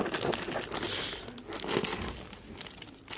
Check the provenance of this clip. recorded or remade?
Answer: recorded